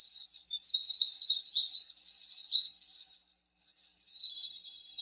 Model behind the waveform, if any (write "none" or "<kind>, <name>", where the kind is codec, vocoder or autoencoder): none